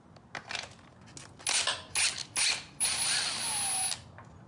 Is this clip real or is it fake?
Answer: real